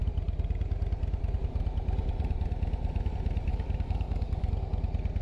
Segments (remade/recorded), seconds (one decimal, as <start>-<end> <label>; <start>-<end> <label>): 0.0-3.5 recorded; 3.5-4.5 remade; 4.5-5.2 recorded